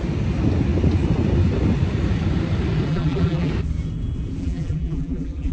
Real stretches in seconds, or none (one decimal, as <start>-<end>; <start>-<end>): 0.0-2.9; 3.5-4.4